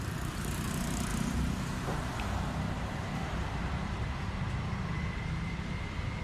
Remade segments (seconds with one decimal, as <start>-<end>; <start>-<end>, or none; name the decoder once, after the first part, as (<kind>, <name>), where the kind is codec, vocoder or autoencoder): 0.0-6.2 (vocoder, BigVGAN v2)